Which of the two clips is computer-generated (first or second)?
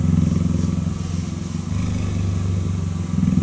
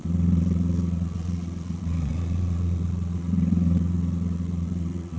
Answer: second